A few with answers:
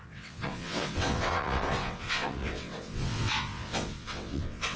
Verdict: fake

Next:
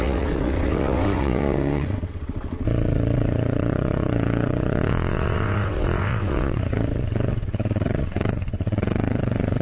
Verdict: fake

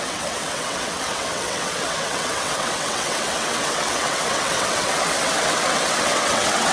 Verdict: fake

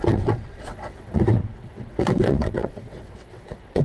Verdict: fake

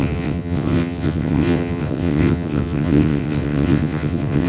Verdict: fake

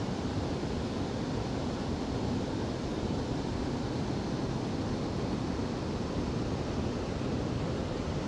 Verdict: real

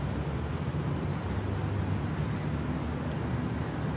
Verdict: real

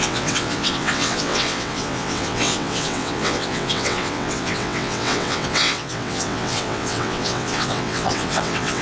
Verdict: fake